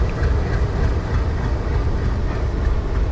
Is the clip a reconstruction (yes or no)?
no